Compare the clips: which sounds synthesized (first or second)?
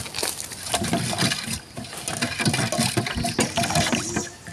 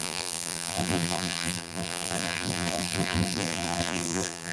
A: second